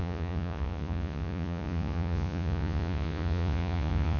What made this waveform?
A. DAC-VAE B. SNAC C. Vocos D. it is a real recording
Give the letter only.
C